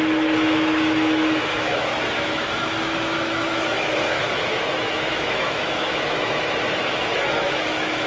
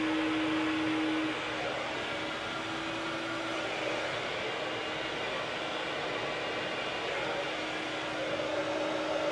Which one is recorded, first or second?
second